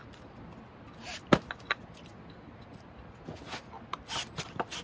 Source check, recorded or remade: recorded